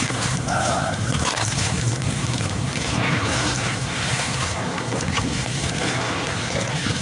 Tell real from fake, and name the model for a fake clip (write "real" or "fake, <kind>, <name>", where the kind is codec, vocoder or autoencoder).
fake, codec, SNAC